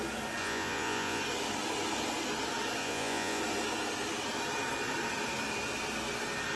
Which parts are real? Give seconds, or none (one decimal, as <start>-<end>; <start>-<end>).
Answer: 0.0-0.4; 1.2-2.8; 3.4-6.6